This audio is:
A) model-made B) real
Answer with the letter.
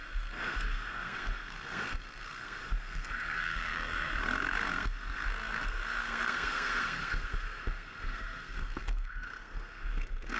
A